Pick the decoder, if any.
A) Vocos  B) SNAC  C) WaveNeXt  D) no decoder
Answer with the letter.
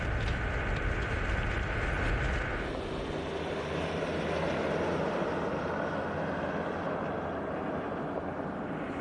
D